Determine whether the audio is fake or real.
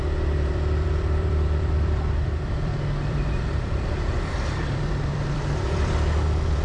fake